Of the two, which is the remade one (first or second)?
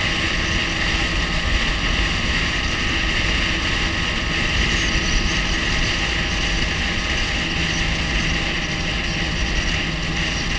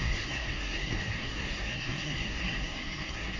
second